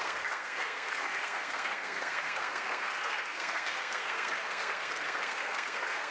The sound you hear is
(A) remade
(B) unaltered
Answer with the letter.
A